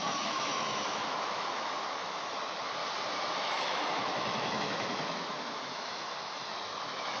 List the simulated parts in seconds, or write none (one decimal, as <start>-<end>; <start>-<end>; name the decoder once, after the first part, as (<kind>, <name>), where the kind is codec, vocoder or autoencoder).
0.0-2.8 (autoencoder, DAC-VAE); 3.3-7.2